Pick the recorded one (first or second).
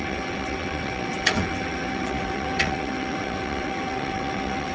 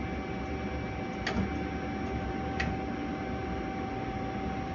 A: second